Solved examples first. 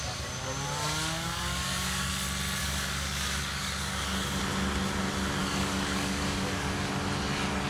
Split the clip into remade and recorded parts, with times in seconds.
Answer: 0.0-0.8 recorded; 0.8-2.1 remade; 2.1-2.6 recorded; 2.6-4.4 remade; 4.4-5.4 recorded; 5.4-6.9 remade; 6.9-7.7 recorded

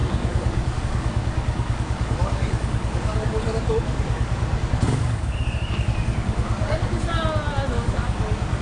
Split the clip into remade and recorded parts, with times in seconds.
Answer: 0.0-7.2 remade; 7.2-7.7 recorded; 7.7-8.6 remade

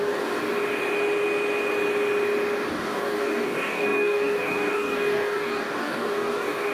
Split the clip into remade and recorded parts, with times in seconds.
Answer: 0.0-0.4 remade; 0.4-2.7 recorded; 2.7-6.7 remade

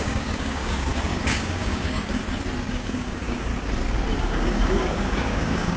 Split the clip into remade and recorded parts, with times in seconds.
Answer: 0.0-2.2 remade; 2.2-2.7 recorded; 2.7-3.5 remade; 3.5-4.2 recorded; 4.2-5.8 remade

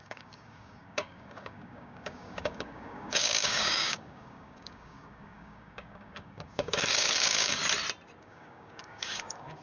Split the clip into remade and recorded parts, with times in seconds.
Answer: 0.0-7.6 remade; 7.6-8.2 recorded; 8.2-9.6 remade

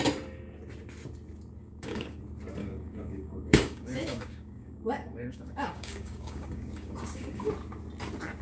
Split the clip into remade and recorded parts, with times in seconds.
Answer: 0.0-1.6 recorded; 1.6-2.2 remade; 2.2-2.6 recorded; 2.6-7.5 remade; 7.5-8.4 recorded